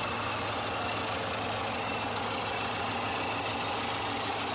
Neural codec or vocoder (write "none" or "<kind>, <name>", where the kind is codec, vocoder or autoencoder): none